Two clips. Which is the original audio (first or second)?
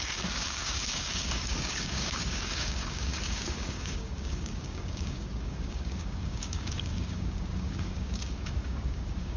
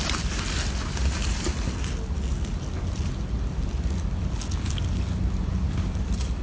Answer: second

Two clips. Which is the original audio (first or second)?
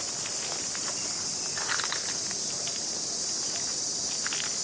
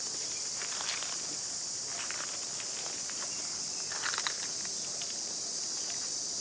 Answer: first